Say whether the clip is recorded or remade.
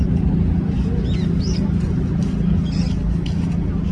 recorded